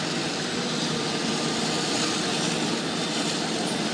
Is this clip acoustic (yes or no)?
yes